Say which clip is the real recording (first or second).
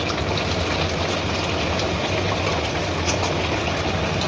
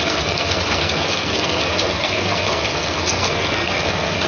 first